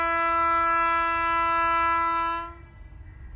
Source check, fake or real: real